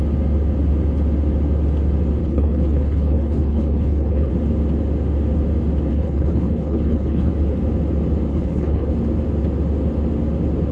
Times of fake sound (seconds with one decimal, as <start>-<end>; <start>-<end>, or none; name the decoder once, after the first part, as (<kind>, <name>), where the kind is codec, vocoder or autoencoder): 2.2-4.3 (codec, HILCodec); 5.9-7.3; 8.3-8.9